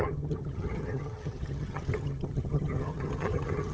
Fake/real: fake